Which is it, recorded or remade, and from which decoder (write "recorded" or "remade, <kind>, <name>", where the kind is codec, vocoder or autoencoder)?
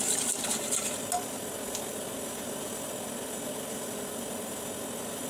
recorded